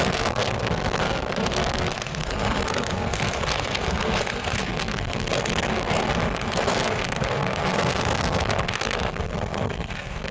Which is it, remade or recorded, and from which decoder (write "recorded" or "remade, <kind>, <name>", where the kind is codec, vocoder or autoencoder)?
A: remade, codec, SNAC